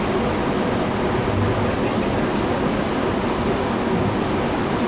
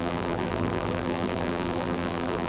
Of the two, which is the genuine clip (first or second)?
first